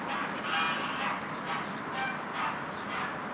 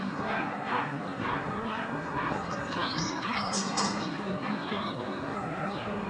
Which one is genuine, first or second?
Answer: first